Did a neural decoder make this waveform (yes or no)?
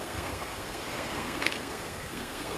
yes